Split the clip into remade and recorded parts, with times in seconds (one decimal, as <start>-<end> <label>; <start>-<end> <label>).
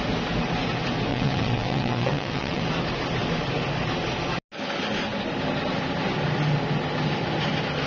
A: 0.0-1.1 recorded; 1.1-2.6 remade; 2.6-7.9 recorded